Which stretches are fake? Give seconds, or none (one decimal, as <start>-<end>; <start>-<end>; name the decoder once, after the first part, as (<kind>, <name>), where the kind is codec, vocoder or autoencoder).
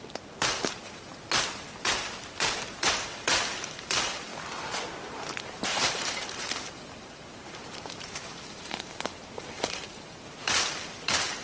0.0-1.1 (vocoder, BigVGAN v2); 2.8-4.3; 5.7-11.4